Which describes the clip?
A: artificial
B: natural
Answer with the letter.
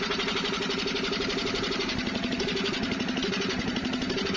A